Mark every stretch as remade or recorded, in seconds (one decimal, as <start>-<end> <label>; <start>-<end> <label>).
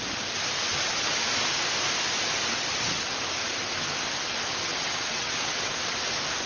0.0-4.7 recorded; 4.7-5.7 remade; 5.7-6.5 recorded